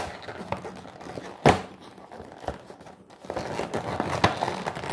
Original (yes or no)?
yes